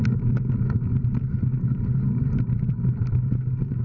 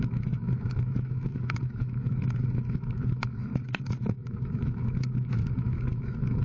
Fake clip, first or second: second